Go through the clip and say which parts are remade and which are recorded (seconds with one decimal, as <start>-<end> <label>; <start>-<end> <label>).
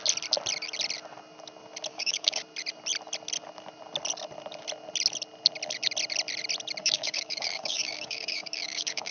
0.0-1.9 recorded; 1.9-2.4 remade; 2.4-6.8 recorded; 6.8-9.1 remade